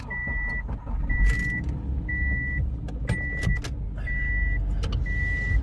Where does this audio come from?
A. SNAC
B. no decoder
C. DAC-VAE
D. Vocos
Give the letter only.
B